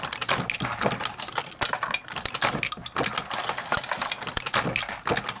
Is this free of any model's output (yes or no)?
yes